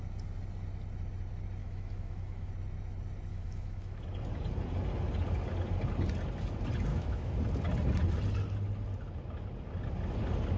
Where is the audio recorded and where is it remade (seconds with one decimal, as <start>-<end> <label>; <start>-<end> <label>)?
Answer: 0.0-1.6 recorded; 1.6-2.5 remade; 2.5-3.3 recorded; 3.3-4.0 remade; 4.0-6.9 recorded; 6.9-7.4 remade; 7.4-10.6 recorded